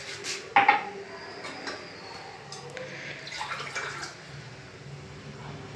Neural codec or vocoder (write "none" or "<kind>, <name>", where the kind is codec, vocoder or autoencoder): none